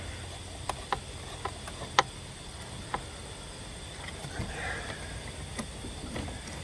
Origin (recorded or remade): recorded